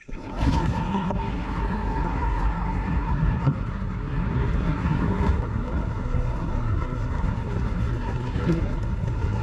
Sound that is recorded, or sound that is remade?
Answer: remade